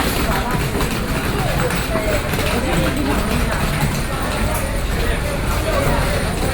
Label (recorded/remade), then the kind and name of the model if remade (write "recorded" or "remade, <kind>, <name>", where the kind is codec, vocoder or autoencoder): recorded